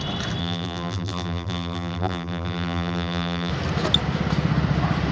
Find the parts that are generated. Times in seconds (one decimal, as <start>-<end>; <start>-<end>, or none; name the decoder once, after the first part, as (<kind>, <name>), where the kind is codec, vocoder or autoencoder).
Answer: 0.4-3.5 (vocoder, BigVGAN v2)